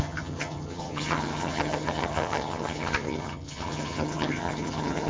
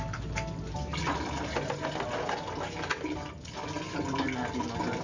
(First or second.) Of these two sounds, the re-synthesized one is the first